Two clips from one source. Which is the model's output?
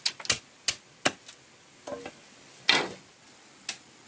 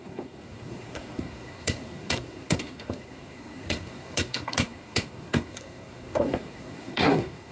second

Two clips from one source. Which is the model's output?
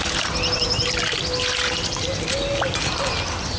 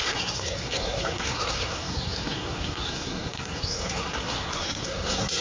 second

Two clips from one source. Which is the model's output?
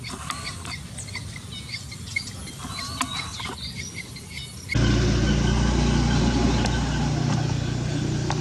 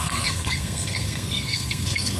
second